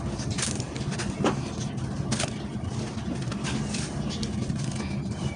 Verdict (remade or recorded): recorded